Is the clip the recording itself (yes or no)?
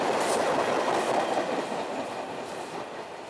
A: yes